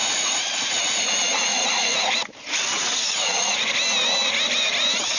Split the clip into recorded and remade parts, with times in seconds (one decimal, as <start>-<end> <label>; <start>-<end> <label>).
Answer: 0.0-1.1 remade; 1.1-1.5 recorded; 1.5-3.6 remade; 3.6-5.2 recorded

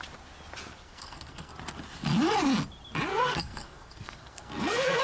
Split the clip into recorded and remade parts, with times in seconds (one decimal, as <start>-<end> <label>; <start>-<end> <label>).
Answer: 0.0-0.7 recorded; 0.7-1.5 remade; 1.5-3.1 recorded; 3.1-5.0 remade

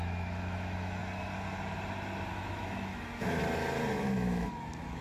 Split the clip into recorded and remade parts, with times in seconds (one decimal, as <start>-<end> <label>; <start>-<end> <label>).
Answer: 0.0-1.0 remade; 1.0-2.3 recorded; 2.3-3.4 remade; 3.4-3.9 recorded; 3.9-5.0 remade

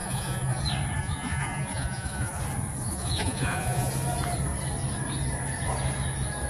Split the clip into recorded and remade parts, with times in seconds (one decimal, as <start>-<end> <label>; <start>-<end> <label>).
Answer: 0.0-0.6 remade; 0.6-1.0 recorded; 1.0-2.4 remade; 2.4-2.8 recorded; 2.8-3.9 remade; 3.9-6.5 recorded

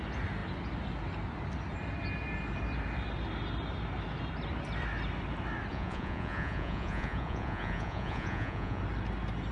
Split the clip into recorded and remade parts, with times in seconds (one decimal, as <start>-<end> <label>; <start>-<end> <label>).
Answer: 0.0-5.7 recorded; 5.7-8.8 remade; 8.8-9.5 recorded

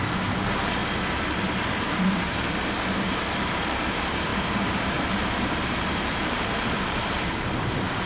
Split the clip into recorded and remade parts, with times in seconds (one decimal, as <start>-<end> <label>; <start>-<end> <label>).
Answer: 0.0-0.8 remade; 0.8-1.8 recorded; 1.8-8.1 remade

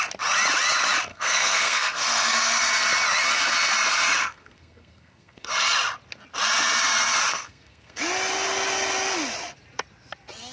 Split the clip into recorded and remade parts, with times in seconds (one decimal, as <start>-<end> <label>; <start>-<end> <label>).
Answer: 0.0-1.1 recorded; 1.1-2.6 remade; 2.6-4.2 recorded; 4.2-5.5 remade; 5.5-7.3 recorded; 7.3-8.0 remade; 8.0-10.5 recorded